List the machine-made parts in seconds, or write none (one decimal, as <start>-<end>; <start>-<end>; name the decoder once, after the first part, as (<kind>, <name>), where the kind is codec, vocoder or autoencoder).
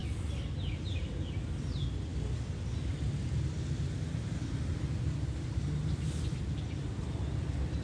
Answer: none